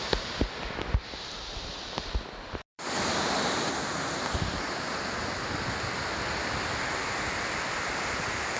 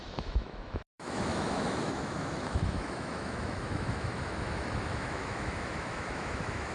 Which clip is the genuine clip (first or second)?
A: first